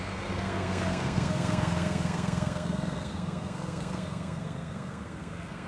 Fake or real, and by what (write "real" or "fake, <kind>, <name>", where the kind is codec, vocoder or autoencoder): fake, codec, SNAC